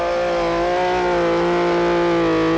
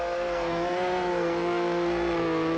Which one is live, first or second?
first